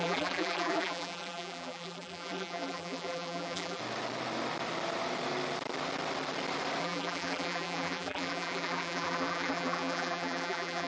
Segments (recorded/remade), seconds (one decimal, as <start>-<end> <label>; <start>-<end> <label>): 0.0-3.8 remade; 3.8-6.8 recorded; 6.8-10.9 remade